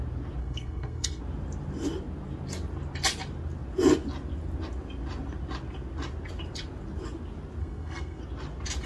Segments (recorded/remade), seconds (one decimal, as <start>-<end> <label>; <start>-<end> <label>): 0.0-0.4 recorded; 0.4-1.2 remade; 1.2-7.6 recorded; 7.6-8.2 remade; 8.2-8.9 recorded